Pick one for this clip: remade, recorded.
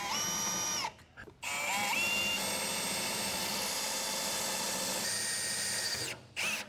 recorded